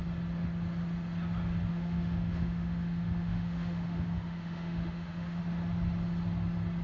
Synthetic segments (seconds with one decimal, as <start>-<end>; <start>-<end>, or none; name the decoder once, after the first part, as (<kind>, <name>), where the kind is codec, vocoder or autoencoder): 1.7-5.4 (autoencoder, DAC-VAE)